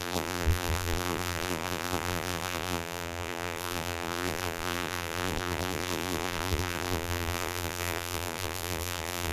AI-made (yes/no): yes